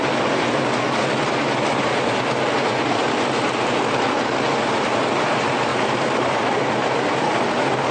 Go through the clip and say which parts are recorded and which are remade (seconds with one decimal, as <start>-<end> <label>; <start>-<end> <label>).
0.0-5.7 recorded; 5.7-6.7 remade; 6.7-7.9 recorded